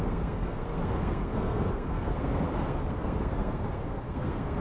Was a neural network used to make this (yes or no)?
yes